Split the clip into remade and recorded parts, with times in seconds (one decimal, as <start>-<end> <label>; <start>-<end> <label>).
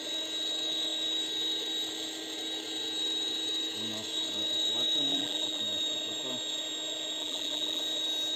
0.0-5.1 recorded; 5.1-5.6 remade; 5.6-7.2 recorded; 7.2-7.8 remade; 7.8-8.4 recorded